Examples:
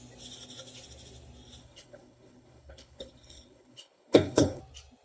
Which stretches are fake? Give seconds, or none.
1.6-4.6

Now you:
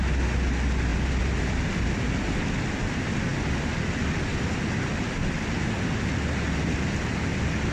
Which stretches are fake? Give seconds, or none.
0.9-1.5

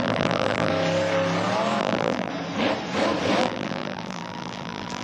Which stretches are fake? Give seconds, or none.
0.0-0.7; 1.8-2.3; 3.4-5.0

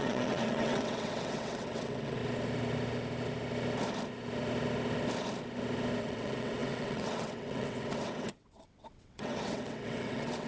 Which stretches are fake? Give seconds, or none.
0.0-2.2; 6.0-10.5

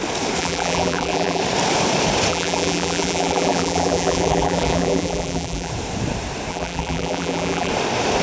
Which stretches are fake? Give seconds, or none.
0.4-1.4; 2.3-5.7; 6.5-7.7

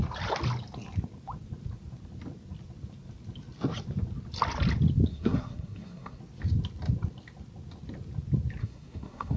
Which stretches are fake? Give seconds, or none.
5.1-6.2; 8.6-9.4

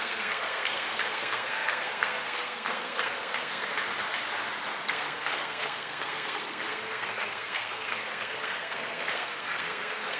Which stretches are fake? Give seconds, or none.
0.0-3.7; 4.8-10.2